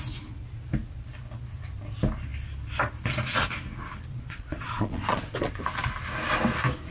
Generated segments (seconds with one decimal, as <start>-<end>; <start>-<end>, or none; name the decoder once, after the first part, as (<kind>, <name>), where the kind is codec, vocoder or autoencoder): 4.1-5.6 (vocoder, Vocos)